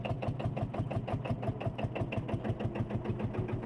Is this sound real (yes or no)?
yes